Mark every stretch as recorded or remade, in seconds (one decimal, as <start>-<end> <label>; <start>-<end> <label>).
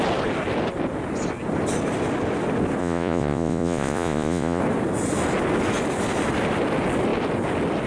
0.0-2.8 recorded; 2.8-4.6 remade; 4.6-7.9 recorded